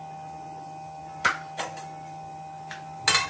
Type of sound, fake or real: real